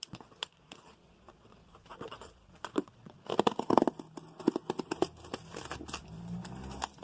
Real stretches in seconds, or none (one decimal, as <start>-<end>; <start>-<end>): 1.6-2.1; 3.3-7.0